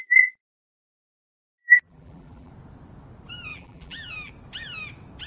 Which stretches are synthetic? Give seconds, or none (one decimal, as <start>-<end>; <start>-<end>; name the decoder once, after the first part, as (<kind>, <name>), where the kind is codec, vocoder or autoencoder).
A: 1.6-2.5 (vocoder, BigVGAN v2); 3.5-4.3